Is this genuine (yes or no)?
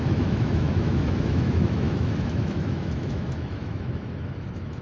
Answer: no